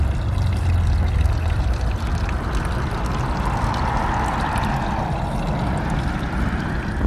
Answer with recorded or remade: recorded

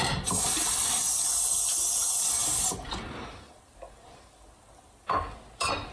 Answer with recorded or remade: recorded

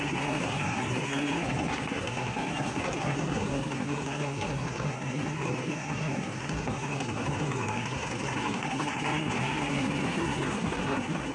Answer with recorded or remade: remade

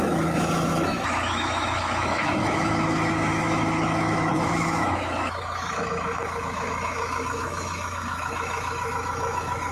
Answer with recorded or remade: remade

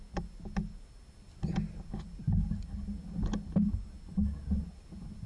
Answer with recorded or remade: recorded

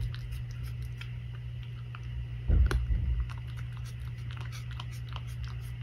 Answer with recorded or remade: recorded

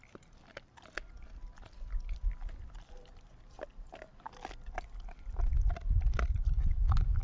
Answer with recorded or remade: recorded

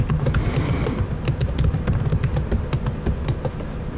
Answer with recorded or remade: recorded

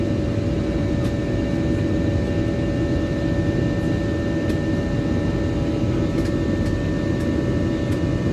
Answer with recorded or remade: recorded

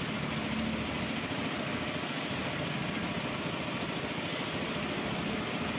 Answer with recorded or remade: recorded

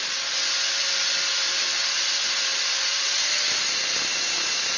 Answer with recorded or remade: recorded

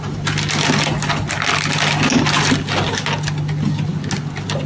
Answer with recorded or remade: recorded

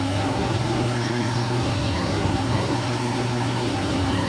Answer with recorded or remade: remade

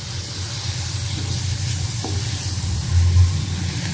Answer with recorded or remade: recorded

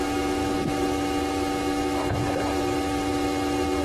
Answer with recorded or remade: recorded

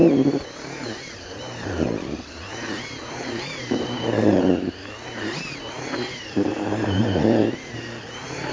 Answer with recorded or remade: remade